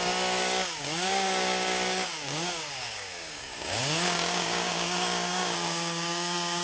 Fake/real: fake